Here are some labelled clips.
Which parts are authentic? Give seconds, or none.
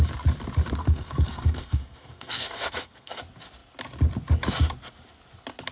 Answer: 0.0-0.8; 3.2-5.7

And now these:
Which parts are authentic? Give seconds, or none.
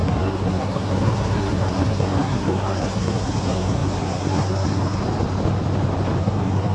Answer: 5.0-6.2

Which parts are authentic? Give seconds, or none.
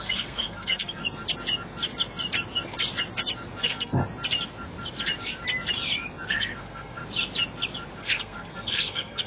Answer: 1.0-3.6; 4.0-6.3; 7.0-8.0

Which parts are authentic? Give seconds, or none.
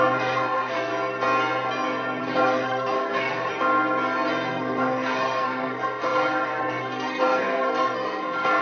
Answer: 0.9-2.2; 3.5-4.5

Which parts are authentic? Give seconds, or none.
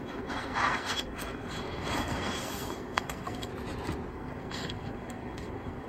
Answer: 3.5-4.1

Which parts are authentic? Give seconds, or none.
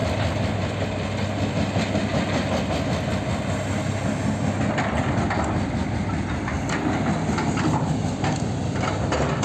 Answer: 0.0-9.4